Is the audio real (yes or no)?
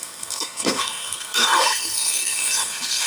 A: no